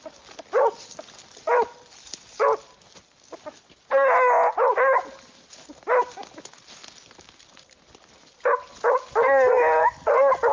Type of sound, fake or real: real